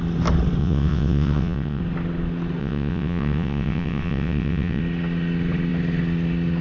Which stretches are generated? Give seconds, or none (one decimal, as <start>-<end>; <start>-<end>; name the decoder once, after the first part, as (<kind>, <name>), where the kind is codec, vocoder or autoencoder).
0.6-1.8 (vocoder, WaveNeXt); 2.6-4.8